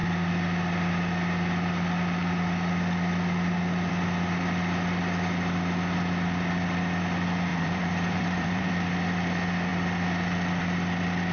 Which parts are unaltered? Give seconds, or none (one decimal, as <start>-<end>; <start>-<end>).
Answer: 0.0-7.5; 8.7-11.3